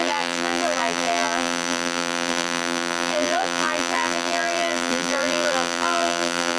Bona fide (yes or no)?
no